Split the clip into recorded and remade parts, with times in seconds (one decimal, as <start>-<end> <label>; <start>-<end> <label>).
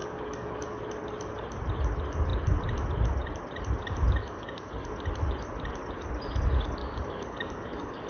0.0-0.8 remade; 0.8-4.2 recorded; 4.2-4.9 remade; 4.9-6.8 recorded; 6.8-8.1 remade